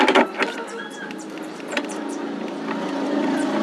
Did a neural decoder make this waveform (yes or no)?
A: no